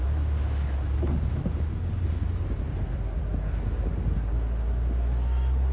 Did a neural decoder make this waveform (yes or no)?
no